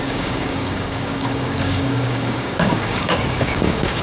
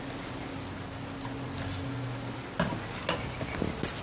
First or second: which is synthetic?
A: first